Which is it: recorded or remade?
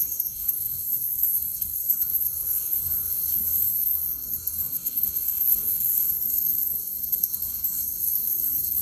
remade